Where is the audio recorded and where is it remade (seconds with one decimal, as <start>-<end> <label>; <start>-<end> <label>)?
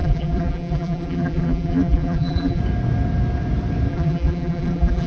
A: 0.0-2.6 remade; 2.6-3.9 recorded; 3.9-5.1 remade